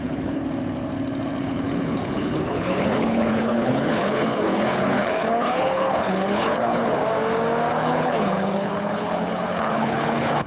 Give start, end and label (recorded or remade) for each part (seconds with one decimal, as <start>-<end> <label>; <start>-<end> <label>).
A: 0.0-0.4 remade; 0.4-1.4 recorded; 1.4-7.0 remade; 7.0-7.7 recorded; 7.7-10.5 remade